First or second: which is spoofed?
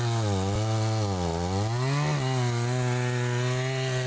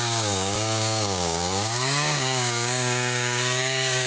second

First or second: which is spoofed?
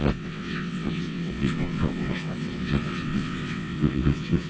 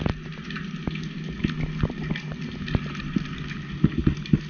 first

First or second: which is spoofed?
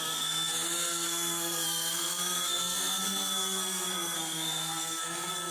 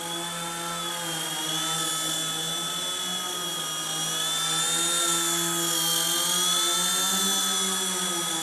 first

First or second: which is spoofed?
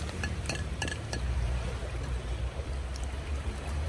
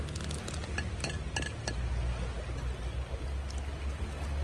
first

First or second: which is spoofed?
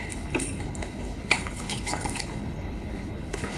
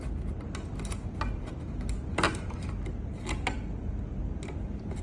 first